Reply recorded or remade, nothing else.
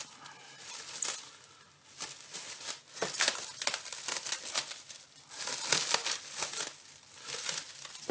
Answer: recorded